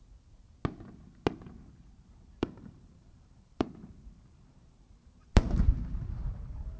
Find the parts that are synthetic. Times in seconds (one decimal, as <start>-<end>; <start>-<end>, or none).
2.4-6.8